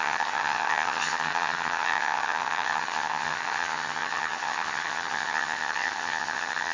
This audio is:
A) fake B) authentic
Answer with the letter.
A